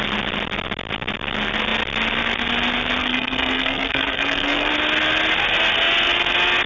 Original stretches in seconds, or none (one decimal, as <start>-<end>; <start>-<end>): 0.0-3.0; 4.7-6.7